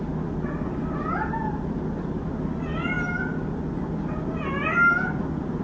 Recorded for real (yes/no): yes